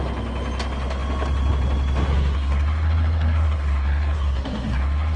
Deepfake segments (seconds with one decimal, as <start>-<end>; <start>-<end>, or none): 2.1-5.2